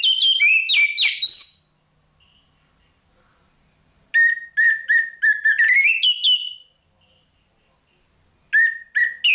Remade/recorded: recorded